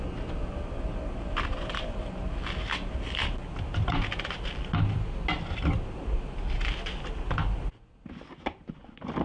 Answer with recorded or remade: recorded